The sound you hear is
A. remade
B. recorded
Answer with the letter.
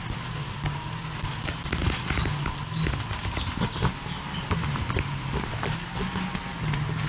B